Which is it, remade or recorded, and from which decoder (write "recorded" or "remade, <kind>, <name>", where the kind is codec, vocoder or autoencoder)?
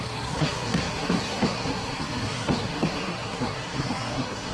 remade, codec, SNAC